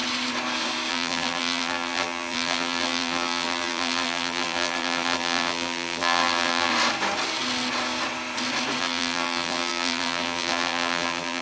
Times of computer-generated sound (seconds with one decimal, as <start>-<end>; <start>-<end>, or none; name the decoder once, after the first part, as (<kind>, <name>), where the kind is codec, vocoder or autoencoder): 0.9-6.7 (vocoder, BigVGAN v2); 8.8-11.4